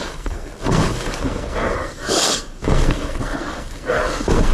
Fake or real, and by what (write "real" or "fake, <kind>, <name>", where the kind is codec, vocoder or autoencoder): fake, codec, SNAC